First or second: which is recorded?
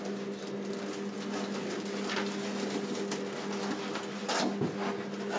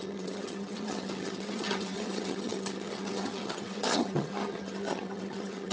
first